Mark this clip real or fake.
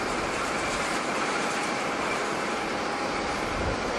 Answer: fake